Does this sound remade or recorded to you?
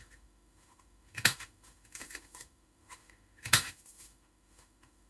remade